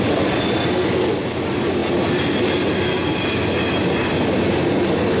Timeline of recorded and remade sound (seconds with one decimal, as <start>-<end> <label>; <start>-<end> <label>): 0.0-5.2 recorded